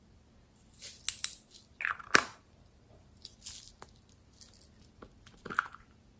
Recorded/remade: recorded